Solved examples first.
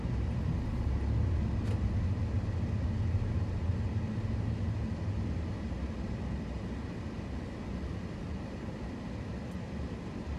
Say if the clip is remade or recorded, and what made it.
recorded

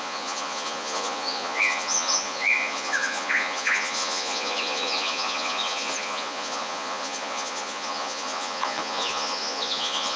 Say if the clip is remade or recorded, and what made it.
remade, vocoder, Vocos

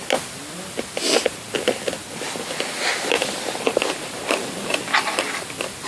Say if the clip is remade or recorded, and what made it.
recorded